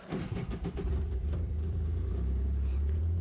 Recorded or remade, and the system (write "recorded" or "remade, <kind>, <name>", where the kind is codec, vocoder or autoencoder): remade, vocoder, BigVGAN v2